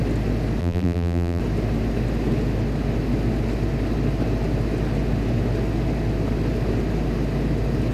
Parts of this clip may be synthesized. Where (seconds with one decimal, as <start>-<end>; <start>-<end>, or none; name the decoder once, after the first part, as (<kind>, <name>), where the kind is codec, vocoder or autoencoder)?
0.6-1.4 (vocoder, BigVGAN v2)